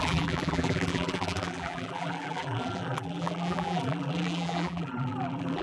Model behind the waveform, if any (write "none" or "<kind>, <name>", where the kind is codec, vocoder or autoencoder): vocoder, BigVGAN v2